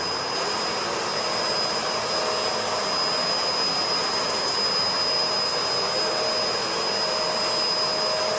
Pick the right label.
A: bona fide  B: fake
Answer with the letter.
A